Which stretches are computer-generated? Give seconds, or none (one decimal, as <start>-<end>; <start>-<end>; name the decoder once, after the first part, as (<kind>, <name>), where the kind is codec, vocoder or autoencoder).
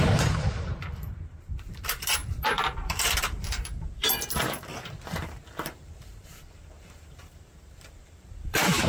0.0-8.9 (vocoder, BigVGAN v2)